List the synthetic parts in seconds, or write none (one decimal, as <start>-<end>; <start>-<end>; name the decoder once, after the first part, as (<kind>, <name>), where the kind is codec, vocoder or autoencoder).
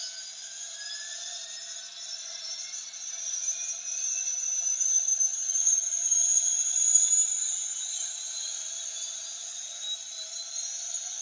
6.3-7.1 (vocoder, Vocos)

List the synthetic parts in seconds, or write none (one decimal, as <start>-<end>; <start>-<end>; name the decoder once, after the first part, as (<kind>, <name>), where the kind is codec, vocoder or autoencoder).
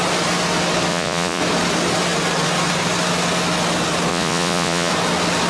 0.9-1.4 (vocoder, Vocos); 4.1-4.9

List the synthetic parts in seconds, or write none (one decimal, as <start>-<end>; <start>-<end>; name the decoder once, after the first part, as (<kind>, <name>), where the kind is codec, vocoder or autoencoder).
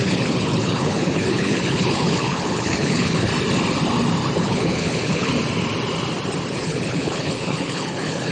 0.0-3.3 (codec, HILCodec); 4.4-5.3; 6.5-8.3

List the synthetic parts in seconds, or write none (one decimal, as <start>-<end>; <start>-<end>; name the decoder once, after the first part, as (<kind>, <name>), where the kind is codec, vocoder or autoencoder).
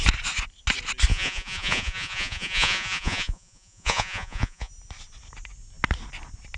1.1-4.7 (vocoder, Vocos)